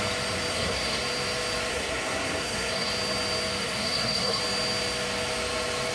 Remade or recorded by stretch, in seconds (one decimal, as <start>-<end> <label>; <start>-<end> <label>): 0.0-0.5 recorded; 0.5-1.0 remade; 1.0-1.7 recorded; 1.7-2.9 remade; 2.9-3.6 recorded; 3.6-4.4 remade; 4.4-5.9 recorded